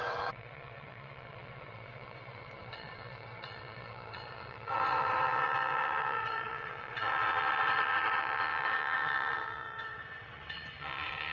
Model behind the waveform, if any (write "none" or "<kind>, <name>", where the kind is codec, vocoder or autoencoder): vocoder, WaveNeXt